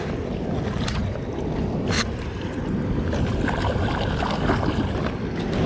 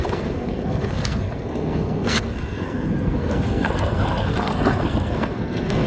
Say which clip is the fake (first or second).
second